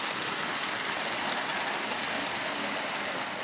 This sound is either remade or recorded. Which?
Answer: recorded